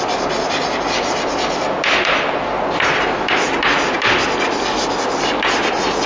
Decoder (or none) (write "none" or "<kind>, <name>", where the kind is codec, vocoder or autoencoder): none